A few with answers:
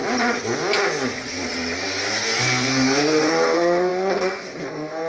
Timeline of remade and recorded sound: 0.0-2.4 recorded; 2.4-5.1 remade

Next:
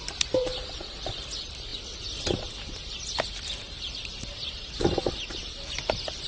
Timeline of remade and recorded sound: 0.0-1.7 remade; 1.7-5.5 recorded; 5.5-6.3 remade

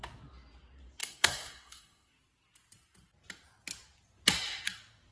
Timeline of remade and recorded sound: 0.0-1.0 recorded; 1.0-2.1 remade; 2.1-5.1 recorded